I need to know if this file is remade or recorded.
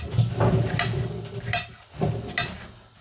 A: recorded